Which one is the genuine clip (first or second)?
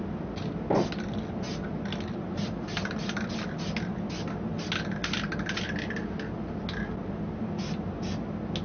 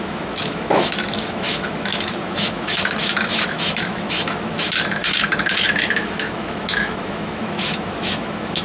first